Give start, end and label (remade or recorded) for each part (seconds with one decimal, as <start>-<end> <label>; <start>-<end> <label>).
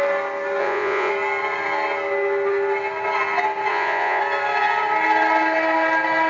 0.0-0.6 recorded; 0.6-1.1 remade; 1.1-3.7 recorded; 3.7-4.2 remade; 4.2-6.3 recorded